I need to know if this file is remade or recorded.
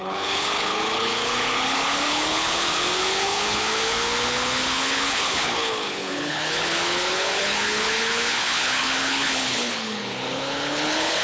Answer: remade